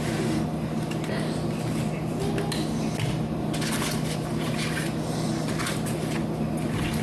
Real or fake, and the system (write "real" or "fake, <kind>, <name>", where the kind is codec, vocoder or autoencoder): real